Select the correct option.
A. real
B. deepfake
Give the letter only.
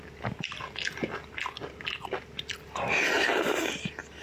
A